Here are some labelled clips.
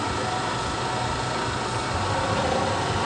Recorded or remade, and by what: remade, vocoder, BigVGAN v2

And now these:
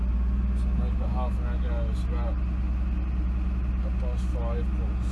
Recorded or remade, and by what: recorded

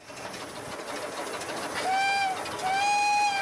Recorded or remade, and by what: recorded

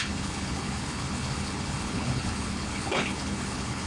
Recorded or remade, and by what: remade, codec, HILCodec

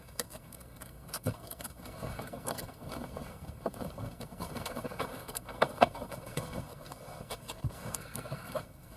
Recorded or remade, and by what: remade, codec, SNAC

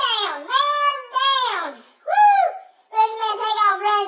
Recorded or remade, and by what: recorded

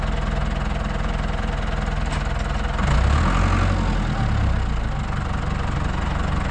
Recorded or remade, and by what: recorded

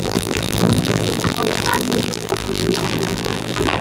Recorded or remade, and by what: remade, vocoder, BigVGAN v2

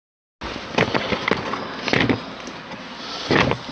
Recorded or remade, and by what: recorded